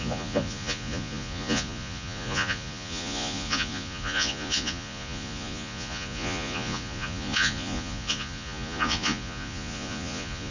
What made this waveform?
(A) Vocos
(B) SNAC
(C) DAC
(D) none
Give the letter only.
A